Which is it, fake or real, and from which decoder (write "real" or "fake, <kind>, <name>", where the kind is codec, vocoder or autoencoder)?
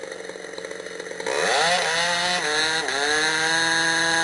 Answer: real